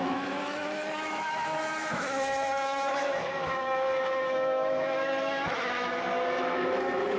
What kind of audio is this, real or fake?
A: fake